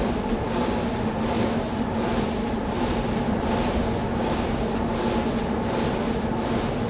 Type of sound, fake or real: real